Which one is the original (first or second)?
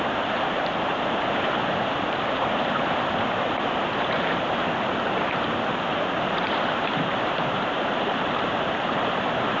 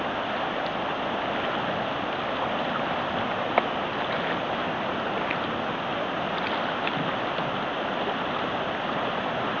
second